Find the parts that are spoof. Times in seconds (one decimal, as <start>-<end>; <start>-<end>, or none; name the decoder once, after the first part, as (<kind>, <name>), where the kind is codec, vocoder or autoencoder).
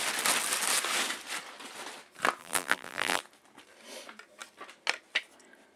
2.4-3.2 (vocoder, BigVGAN v2)